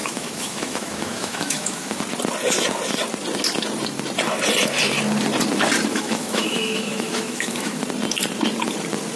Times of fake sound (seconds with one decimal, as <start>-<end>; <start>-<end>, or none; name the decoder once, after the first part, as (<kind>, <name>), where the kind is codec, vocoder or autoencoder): 0.0-2.0 (autoencoder, DAC-VAE); 5.9-7.8